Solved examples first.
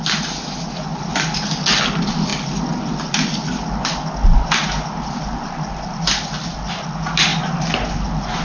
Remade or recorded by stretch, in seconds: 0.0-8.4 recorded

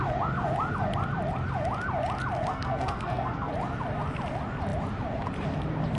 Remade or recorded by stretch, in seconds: 0.0-2.5 recorded; 2.5-3.5 remade; 3.5-6.0 recorded

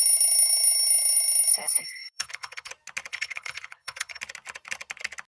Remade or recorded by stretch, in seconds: 0.0-1.5 recorded; 1.5-2.7 remade; 2.7-3.1 recorded; 3.1-4.2 remade; 4.2-5.3 recorded

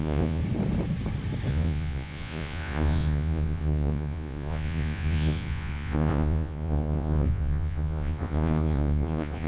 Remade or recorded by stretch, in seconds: 0.0-0.4 remade; 0.4-1.5 recorded; 1.5-9.5 remade

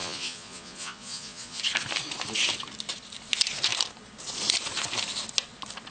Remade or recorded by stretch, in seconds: 0.0-1.6 remade; 1.6-5.9 recorded

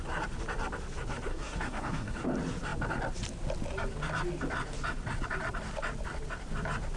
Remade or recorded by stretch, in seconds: 0.0-1.3 recorded; 1.3-2.2 remade; 2.2-7.0 recorded

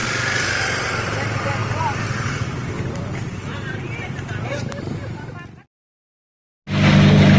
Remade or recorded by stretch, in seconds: 0.0-1.6 recorded; 1.6-5.6 remade; 5.6-7.4 recorded

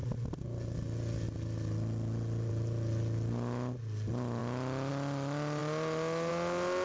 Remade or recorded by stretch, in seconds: 0.0-6.8 recorded